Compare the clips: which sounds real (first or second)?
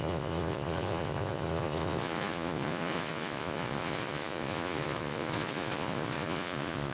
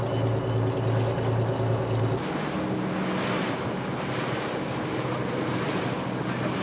second